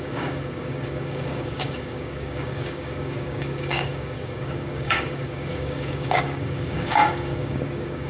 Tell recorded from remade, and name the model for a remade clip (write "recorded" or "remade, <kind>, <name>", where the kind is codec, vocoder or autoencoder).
remade, codec, DAC